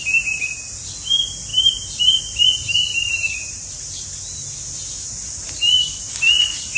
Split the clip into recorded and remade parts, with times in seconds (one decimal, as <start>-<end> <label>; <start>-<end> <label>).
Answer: 0.0-1.5 recorded; 1.5-2.2 remade; 2.2-2.8 recorded; 2.8-3.7 remade; 3.7-6.8 recorded

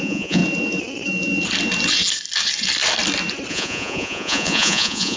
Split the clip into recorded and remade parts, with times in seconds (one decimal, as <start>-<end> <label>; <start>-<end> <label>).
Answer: 0.0-0.4 remade; 0.4-3.5 recorded; 3.5-5.2 remade